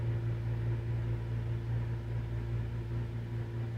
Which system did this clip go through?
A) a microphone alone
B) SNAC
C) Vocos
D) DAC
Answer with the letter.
A